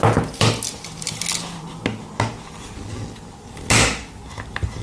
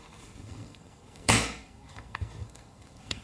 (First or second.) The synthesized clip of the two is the second